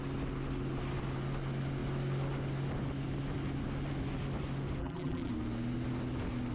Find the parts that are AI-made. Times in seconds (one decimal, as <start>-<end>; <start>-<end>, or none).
4.8-5.3